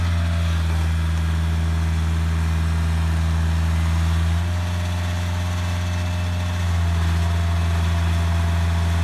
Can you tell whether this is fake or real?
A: real